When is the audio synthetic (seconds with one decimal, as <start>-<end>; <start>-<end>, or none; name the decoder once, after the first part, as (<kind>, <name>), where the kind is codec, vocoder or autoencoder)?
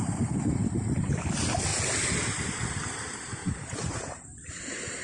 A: 3.4-4.5 (vocoder, BigVGAN v2)